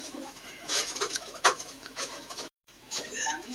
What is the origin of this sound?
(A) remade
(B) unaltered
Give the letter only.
A